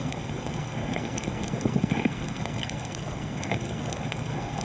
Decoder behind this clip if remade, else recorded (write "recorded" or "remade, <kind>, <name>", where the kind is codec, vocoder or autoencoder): remade, codec, SNAC